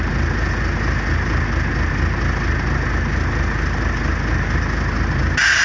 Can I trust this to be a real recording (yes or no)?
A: yes